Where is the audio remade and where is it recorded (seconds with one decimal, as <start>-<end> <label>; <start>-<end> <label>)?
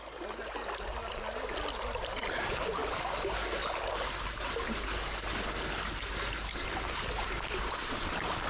0.0-8.5 recorded